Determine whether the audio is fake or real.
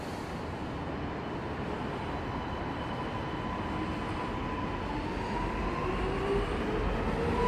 real